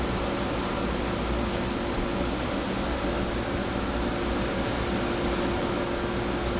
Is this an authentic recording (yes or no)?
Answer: yes